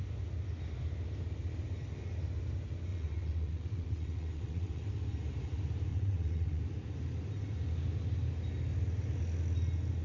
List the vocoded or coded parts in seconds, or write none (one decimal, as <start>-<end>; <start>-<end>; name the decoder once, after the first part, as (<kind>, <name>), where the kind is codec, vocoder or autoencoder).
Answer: 2.9-4.9 (vocoder, WaveNeXt); 5.9-6.6